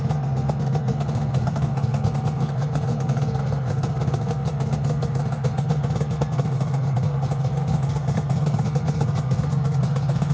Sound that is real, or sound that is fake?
fake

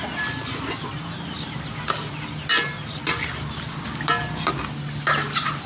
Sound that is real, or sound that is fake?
real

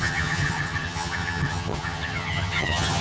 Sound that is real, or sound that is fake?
fake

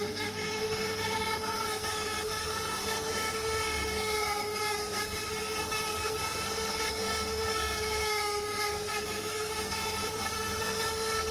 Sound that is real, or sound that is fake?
fake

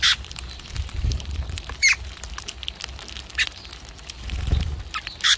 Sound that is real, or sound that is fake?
real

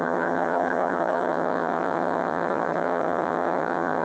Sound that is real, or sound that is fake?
fake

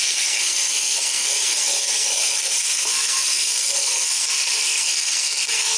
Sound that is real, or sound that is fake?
fake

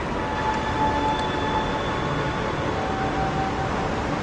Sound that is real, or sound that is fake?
real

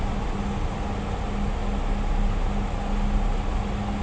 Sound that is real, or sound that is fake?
real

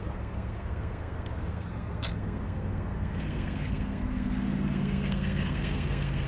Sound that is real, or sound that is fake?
fake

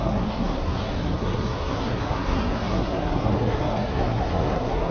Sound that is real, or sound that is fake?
fake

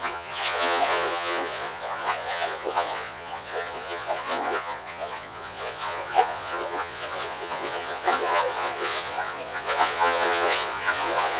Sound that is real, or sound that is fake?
fake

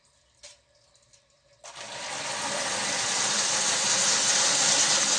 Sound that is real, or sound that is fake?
real